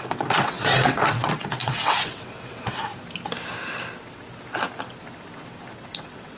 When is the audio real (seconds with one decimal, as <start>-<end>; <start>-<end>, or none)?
2.9-5.7